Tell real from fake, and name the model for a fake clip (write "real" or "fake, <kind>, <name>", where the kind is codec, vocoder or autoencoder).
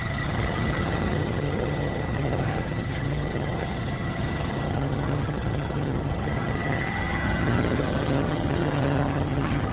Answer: fake, vocoder, HiFi-GAN